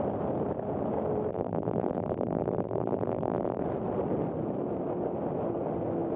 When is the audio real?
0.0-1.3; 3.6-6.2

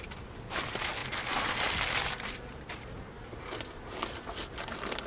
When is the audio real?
1.0-1.9

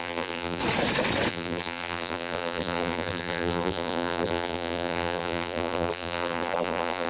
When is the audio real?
0.6-1.3

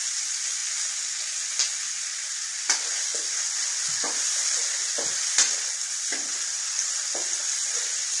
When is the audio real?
0.0-3.1; 3.7-8.2